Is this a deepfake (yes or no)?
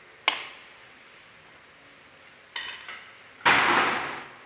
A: no